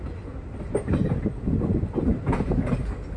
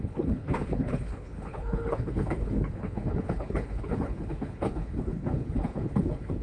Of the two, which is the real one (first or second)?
first